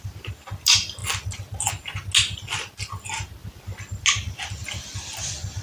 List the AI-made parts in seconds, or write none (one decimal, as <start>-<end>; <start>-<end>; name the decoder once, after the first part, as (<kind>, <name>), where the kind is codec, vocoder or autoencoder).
none